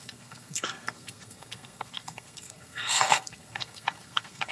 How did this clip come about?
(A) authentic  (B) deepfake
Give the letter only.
B